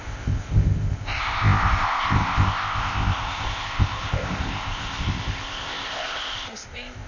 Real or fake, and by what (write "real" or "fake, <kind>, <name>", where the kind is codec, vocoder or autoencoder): fake, codec, ZipCodec